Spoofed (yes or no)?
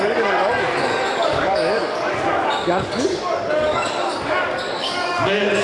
yes